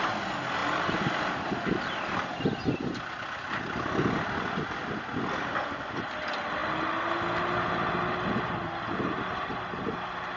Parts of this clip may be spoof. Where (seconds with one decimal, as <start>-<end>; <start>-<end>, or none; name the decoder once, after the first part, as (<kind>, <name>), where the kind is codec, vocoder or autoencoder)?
none